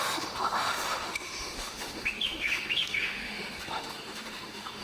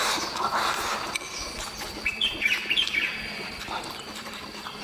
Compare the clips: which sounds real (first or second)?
second